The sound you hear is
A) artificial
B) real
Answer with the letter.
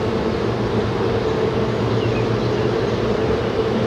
B